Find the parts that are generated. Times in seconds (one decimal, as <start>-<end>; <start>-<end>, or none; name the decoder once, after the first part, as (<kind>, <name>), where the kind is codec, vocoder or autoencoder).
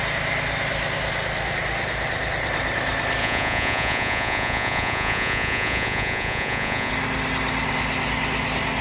3.2-6.9 (vocoder, Vocos)